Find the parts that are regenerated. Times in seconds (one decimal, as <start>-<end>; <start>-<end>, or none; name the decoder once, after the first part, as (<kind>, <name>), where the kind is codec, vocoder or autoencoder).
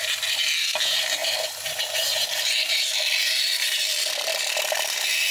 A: 0.0-5.3 (vocoder, BigVGAN v2)